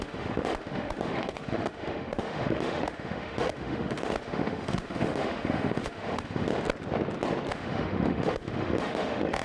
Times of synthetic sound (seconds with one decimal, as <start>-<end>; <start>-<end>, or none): 0.0-6.5; 7.5-9.4